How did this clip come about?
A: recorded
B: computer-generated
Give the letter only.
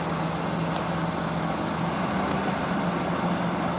A